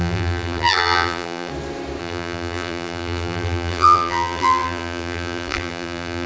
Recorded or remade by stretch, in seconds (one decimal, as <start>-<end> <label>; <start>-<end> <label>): 0.0-1.5 remade; 1.5-2.0 recorded; 2.0-6.3 remade

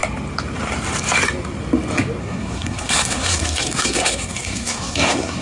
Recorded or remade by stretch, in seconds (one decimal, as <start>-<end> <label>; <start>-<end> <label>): 0.0-2.2 recorded; 2.2-5.4 remade

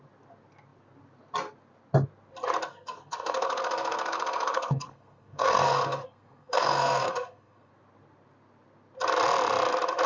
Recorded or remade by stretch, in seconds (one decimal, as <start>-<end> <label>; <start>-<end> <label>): 0.0-2.7 recorded; 2.7-7.7 remade; 7.7-10.1 recorded

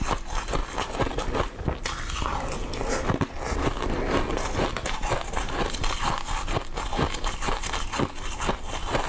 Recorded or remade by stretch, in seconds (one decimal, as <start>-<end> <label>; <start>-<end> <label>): 0.0-9.1 recorded